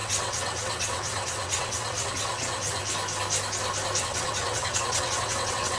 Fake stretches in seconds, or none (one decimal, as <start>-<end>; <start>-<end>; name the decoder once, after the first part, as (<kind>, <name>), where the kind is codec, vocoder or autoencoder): 0.0-2.8 (vocoder, WaveNeXt); 4.0-5.8